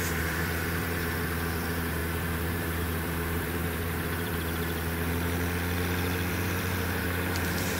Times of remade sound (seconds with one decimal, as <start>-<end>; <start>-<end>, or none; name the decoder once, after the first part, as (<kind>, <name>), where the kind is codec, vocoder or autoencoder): 0.0-4.3 (vocoder, BigVGAN v2); 6.3-7.8